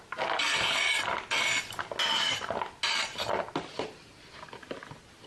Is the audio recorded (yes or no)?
yes